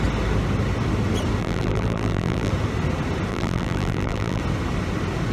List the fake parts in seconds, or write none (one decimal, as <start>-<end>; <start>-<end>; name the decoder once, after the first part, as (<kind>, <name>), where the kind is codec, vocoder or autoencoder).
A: 1.4-2.5 (vocoder, BigVGAN v2); 3.3-4.4